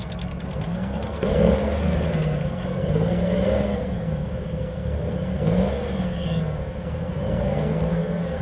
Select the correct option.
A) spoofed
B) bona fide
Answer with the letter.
A